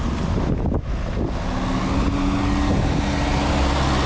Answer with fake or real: real